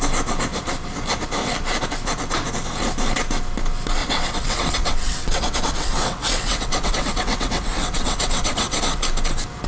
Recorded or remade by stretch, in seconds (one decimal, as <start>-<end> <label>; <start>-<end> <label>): 0.0-4.0 recorded; 4.0-8.8 remade; 8.8-9.7 recorded